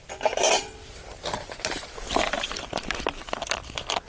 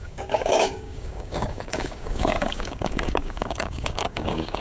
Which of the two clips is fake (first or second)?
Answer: second